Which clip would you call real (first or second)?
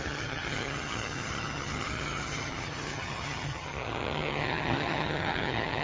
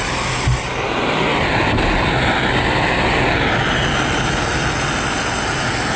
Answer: second